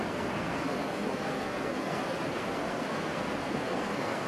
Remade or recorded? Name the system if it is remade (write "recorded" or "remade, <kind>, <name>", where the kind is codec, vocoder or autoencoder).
remade, codec, SNAC